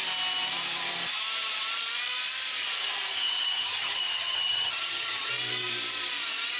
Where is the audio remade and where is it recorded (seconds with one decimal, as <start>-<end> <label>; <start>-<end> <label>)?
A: 0.0-3.1 recorded; 3.1-5.3 remade; 5.3-6.6 recorded